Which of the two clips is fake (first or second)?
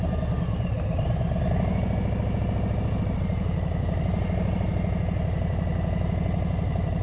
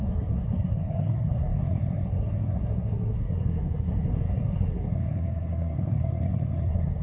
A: second